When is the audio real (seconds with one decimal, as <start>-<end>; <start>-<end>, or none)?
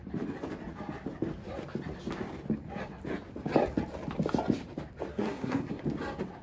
0.0-5.1; 5.8-6.4